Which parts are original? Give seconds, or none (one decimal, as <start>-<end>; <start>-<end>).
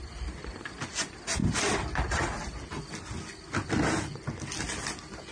0.0-5.3